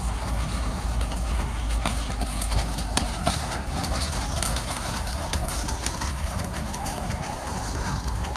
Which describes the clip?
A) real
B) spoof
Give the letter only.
B